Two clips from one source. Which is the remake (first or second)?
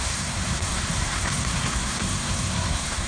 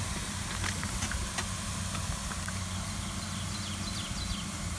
first